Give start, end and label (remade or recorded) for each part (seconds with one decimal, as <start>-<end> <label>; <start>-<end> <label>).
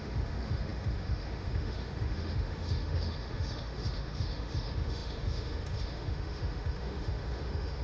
0.0-7.8 remade